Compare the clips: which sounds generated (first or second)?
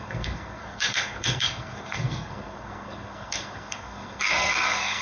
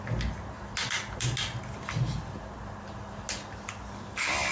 first